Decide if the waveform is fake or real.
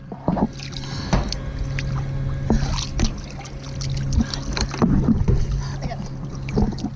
real